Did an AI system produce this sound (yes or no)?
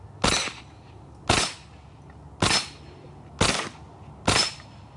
no